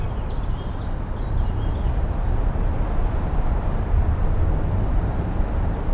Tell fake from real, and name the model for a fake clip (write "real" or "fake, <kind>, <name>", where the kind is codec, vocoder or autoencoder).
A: real